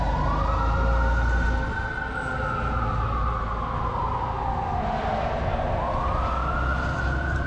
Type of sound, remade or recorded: recorded